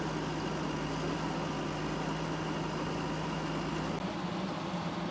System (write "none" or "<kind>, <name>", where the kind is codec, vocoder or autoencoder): none